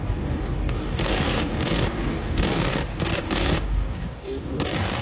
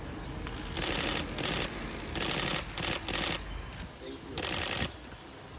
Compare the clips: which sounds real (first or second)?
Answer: second